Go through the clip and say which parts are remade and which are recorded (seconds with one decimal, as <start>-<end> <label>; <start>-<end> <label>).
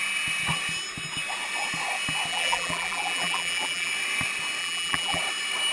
0.0-2.3 recorded; 2.3-3.9 remade; 3.9-4.6 recorded; 4.6-5.2 remade; 5.2-5.7 recorded